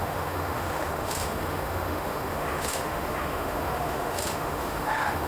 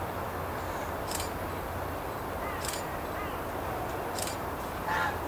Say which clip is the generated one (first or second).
first